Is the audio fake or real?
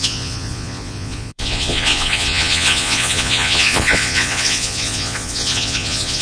fake